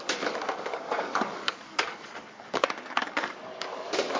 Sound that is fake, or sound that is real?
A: fake